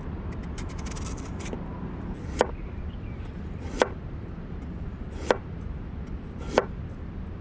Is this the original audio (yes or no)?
yes